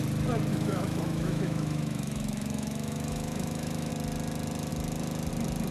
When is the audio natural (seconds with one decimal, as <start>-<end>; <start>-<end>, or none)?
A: 0.0-0.5; 3.9-5.7